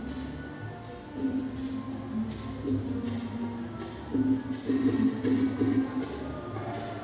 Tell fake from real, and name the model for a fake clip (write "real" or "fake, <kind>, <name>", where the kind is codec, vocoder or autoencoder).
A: real